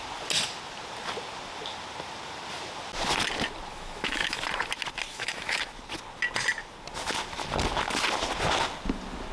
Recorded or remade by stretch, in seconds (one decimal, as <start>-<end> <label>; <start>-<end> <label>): 0.0-3.7 recorded; 3.7-4.4 remade; 4.4-5.1 recorded; 5.1-5.6 remade; 5.6-9.3 recorded